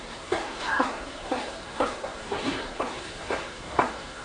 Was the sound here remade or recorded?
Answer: remade